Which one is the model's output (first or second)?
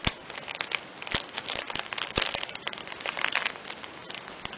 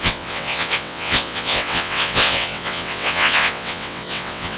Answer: second